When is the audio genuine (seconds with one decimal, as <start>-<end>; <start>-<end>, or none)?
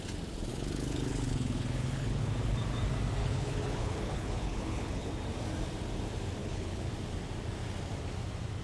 0.0-0.5; 2.3-3.2; 5.1-6.4; 6.9-8.6